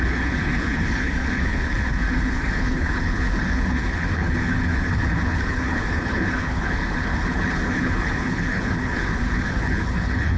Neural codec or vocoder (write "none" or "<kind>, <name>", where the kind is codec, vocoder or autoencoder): codec, HILCodec